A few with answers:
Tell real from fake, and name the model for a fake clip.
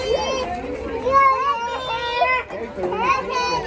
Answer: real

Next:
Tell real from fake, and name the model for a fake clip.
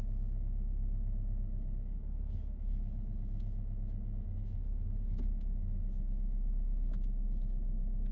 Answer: fake, autoencoder, DAC-VAE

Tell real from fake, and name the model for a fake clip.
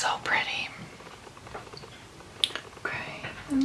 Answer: real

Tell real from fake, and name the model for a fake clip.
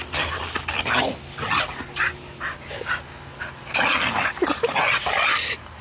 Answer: real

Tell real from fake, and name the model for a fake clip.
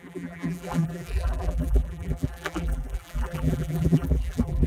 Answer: fake, vocoder, BigVGAN v2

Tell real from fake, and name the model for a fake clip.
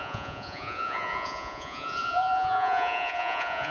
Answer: fake, vocoder, Vocos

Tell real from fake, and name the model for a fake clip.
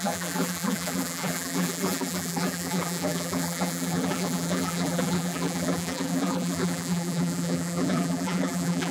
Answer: fake, vocoder, BigVGAN v2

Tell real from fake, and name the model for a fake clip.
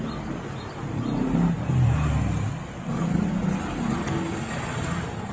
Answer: real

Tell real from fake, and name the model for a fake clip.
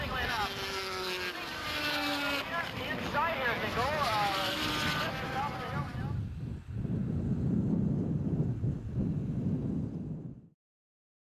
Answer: real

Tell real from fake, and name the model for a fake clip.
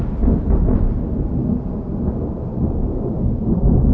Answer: real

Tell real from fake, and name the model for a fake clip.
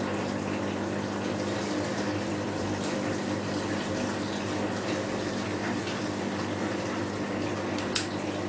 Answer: real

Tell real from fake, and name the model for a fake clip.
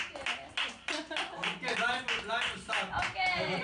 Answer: real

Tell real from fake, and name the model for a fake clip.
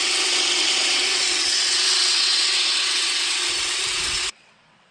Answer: fake, vocoder, WaveNeXt